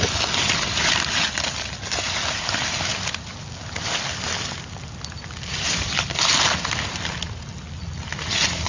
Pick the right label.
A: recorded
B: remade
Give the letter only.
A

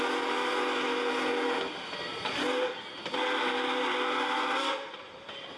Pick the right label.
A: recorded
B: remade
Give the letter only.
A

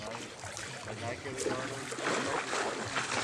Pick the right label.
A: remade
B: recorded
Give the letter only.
B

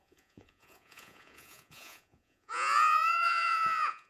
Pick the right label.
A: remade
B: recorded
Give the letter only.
A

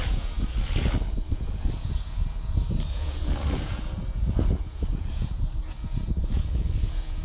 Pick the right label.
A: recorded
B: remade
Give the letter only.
B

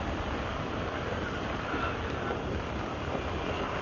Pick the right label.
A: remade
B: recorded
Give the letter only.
B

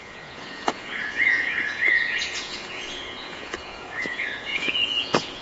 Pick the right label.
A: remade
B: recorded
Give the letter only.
A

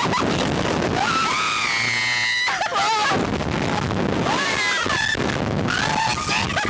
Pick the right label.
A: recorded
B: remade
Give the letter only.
A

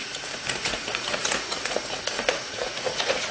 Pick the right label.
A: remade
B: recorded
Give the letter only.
A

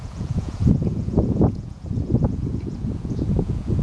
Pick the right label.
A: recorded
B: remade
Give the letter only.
B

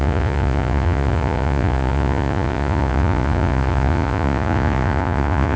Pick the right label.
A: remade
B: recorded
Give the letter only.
A